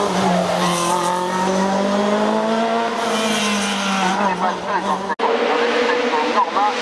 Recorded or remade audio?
recorded